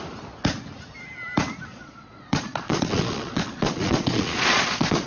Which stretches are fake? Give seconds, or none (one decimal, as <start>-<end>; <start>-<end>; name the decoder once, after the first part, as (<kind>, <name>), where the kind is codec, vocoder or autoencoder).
1.7-5.1 (vocoder, Vocos)